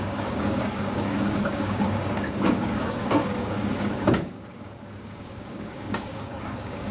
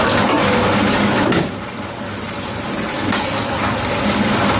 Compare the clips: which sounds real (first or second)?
second